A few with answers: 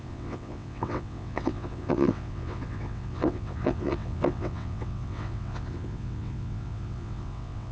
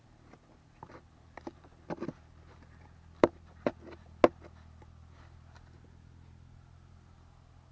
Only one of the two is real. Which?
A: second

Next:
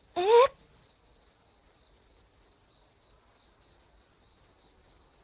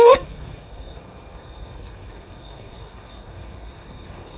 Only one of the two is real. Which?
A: first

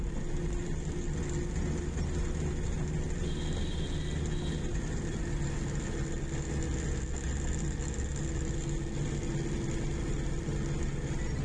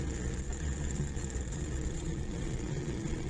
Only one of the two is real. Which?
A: first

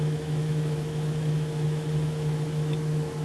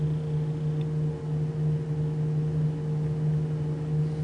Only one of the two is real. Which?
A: second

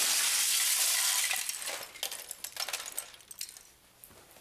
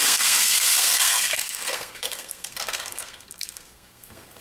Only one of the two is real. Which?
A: first